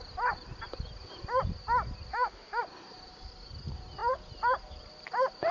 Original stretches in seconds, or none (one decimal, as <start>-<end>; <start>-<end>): 0.0-2.1; 2.6-5.5